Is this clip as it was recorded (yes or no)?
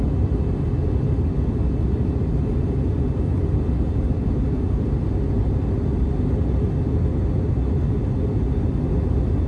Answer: yes